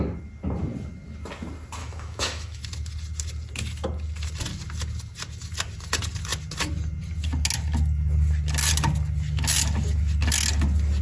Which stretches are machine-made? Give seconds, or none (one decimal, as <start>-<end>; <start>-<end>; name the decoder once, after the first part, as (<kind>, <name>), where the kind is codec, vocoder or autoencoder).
1.8-2.6 (autoencoder, DAC-VAE)